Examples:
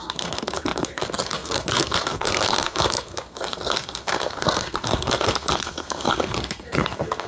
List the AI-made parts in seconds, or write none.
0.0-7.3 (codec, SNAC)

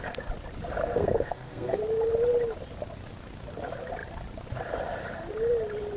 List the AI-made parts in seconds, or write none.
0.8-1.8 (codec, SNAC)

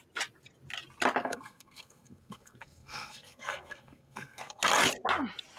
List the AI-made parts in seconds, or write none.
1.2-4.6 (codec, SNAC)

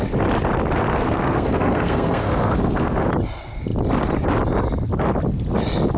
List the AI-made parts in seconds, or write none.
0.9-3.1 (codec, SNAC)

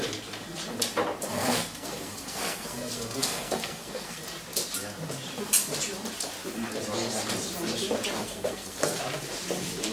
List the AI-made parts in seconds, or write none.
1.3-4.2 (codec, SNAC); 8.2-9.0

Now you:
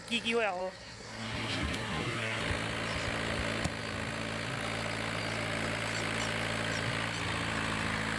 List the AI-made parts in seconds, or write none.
0.6-2.4 (codec, SNAC)